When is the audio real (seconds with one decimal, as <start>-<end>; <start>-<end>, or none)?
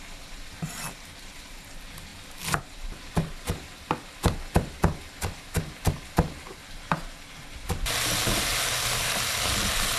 0.0-10.0